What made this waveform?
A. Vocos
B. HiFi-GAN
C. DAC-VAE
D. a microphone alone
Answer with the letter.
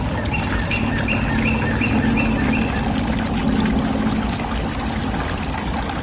D